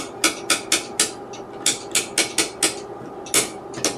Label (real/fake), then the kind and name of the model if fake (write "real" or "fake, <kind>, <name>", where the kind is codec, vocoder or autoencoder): real